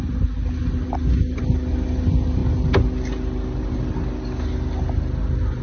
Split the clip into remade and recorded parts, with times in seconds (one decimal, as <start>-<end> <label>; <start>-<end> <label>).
0.0-5.6 recorded